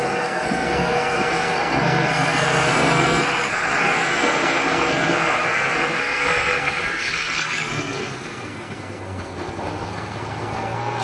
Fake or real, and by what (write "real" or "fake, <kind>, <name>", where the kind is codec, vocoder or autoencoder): fake, codec, SNAC